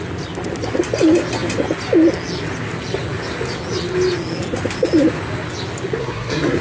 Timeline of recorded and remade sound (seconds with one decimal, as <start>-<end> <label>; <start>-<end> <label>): 0.0-6.0 recorded; 6.0-6.6 remade